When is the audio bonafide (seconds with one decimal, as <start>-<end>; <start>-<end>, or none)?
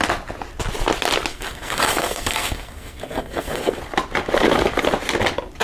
0.0-1.3; 3.8-5.6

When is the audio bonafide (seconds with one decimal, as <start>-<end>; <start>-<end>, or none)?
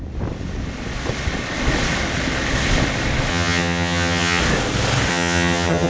0.0-3.3; 4.4-5.1